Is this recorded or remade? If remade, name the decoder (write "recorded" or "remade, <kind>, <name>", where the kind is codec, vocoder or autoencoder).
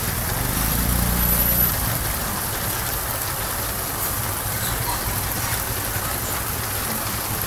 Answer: recorded